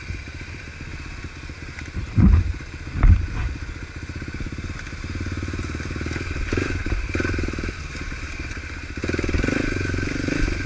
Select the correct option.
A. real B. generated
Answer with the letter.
A